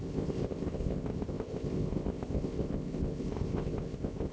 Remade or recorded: remade